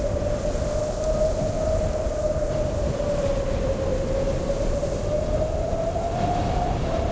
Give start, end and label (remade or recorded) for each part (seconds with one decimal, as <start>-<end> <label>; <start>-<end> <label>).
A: 0.0-7.1 recorded

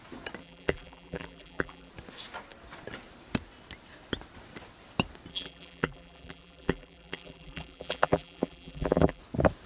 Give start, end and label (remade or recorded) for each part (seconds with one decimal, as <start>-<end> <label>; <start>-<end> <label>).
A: 0.0-0.4 recorded; 0.4-1.9 remade; 1.9-5.3 recorded; 5.3-9.2 remade; 9.2-9.7 recorded

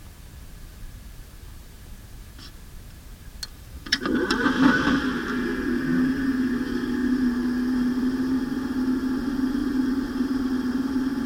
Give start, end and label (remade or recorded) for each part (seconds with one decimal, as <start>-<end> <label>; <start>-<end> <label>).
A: 0.0-3.5 recorded; 3.5-5.0 remade; 5.0-7.0 recorded; 7.0-8.4 remade; 8.4-9.6 recorded; 9.6-11.3 remade

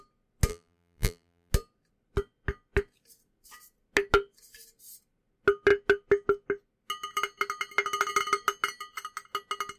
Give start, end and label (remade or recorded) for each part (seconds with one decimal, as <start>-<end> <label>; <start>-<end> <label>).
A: 0.0-0.5 recorded; 0.5-1.5 remade; 1.5-9.8 recorded